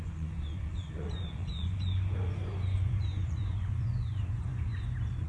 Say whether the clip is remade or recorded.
remade